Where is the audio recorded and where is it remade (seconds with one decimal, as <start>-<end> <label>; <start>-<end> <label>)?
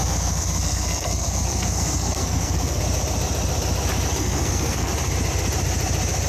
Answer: 0.0-2.8 remade; 2.8-4.2 recorded; 4.2-4.9 remade; 4.9-6.3 recorded